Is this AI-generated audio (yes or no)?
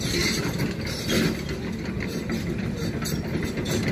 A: no